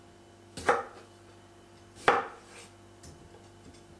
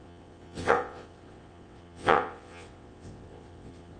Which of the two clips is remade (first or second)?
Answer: second